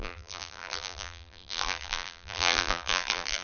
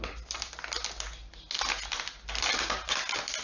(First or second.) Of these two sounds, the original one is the second